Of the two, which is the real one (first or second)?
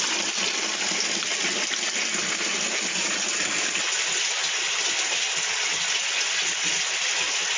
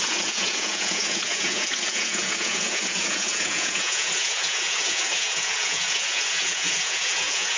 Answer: first